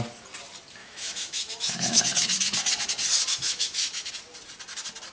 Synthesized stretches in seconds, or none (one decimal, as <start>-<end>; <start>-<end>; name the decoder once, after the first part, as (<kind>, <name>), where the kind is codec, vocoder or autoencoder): 0.8-2.0 (autoencoder, DAC-VAE); 3.3-4.1